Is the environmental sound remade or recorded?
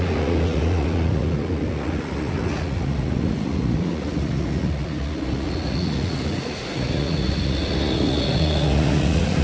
remade